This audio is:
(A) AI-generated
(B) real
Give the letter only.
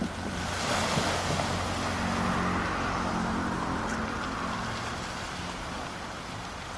B